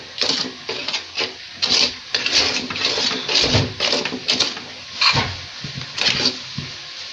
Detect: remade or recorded recorded